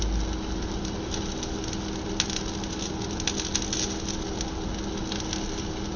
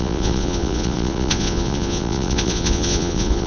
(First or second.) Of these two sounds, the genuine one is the first